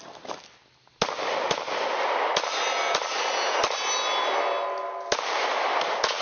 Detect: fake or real real